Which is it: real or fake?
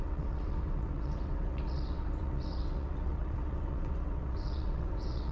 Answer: fake